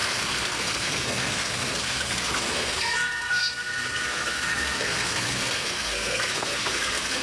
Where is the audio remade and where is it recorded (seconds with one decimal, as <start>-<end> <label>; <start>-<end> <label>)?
0.0-7.2 remade